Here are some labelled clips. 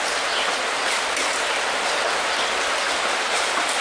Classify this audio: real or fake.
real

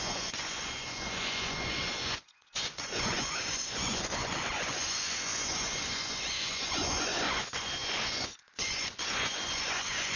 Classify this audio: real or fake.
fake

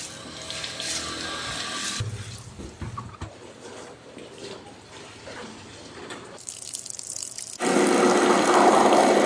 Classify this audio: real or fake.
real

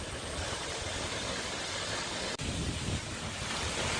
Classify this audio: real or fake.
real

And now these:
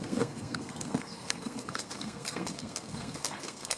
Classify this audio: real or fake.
fake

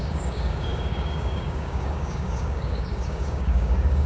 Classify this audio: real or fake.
fake